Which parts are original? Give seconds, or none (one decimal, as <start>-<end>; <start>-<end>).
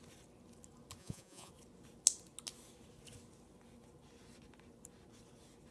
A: 0.0-1.0; 1.5-5.7